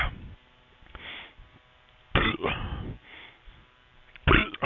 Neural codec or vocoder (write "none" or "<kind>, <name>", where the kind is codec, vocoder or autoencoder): none